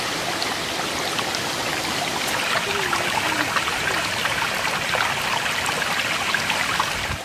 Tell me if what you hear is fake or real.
real